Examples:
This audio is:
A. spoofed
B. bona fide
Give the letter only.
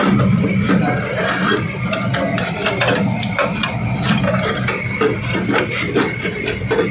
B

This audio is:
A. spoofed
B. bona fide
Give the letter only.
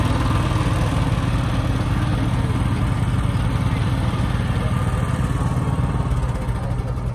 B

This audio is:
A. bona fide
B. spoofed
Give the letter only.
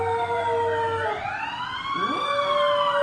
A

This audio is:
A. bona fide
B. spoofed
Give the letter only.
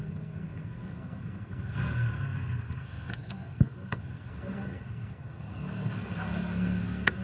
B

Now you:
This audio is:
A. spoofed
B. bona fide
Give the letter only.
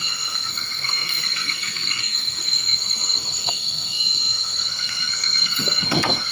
A